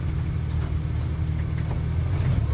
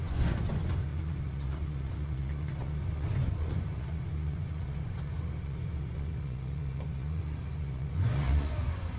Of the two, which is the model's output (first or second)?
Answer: second